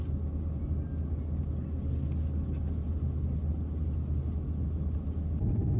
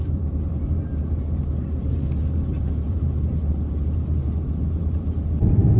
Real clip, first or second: first